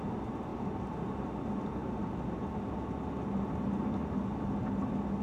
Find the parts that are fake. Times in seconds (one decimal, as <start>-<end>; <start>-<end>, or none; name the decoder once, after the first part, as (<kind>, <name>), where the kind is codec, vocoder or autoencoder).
0.5-1.1 (vocoder, BigVGAN v2)